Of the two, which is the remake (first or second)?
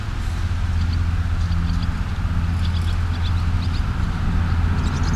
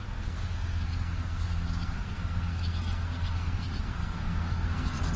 second